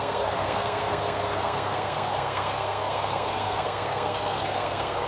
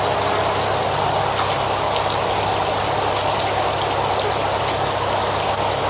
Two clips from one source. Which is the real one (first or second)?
second